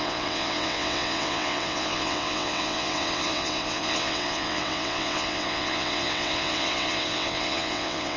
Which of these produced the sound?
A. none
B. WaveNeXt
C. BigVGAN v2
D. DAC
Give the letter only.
B